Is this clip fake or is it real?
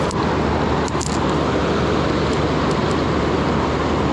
real